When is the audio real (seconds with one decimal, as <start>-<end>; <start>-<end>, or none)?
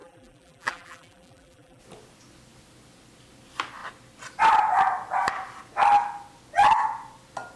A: 1.8-7.6